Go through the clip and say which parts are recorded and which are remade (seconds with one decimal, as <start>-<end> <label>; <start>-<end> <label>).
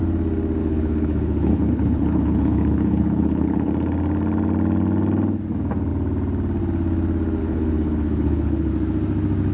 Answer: 0.0-0.6 recorded; 0.6-3.7 remade; 3.7-7.4 recorded; 7.4-8.7 remade; 8.7-9.5 recorded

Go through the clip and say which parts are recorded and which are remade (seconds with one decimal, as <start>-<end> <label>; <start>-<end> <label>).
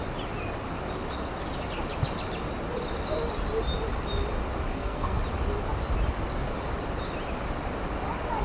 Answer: 0.0-4.7 recorded; 4.7-5.2 remade; 5.2-8.4 recorded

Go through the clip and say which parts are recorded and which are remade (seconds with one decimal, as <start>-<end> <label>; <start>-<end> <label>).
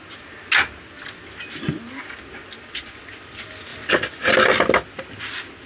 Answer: 0.0-5.7 recorded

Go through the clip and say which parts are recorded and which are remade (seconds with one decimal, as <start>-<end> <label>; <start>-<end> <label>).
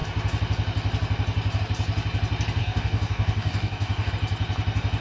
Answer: 0.0-2.6 recorded; 2.6-4.1 remade; 4.1-5.0 recorded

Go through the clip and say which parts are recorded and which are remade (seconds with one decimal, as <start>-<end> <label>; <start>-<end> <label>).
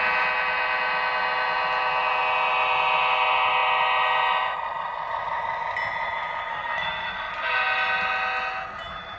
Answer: 0.0-6.5 recorded; 6.5-7.3 remade; 7.3-9.2 recorded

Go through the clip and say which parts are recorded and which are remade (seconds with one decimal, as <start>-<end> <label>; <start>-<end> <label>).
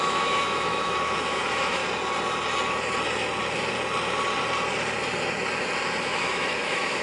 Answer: 0.0-1.8 remade; 1.8-6.0 recorded; 6.0-7.0 remade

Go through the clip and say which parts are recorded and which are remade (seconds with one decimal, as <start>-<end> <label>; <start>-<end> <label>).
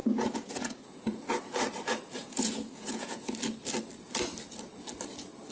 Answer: 0.0-1.3 remade; 1.3-2.2 recorded; 2.2-3.3 remade; 3.3-5.5 recorded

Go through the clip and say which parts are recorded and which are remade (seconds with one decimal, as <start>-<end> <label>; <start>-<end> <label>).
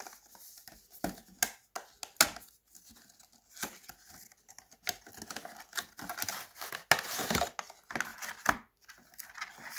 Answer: 0.0-9.8 recorded